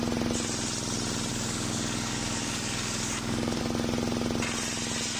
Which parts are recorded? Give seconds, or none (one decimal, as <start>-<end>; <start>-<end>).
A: 0.0-1.3; 3.6-5.2